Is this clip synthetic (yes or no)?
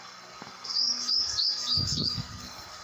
yes